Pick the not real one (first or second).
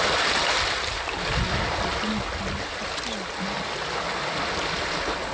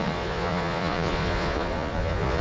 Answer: second